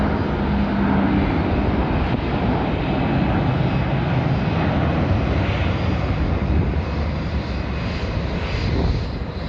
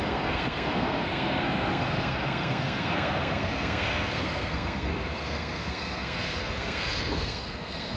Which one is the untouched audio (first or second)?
first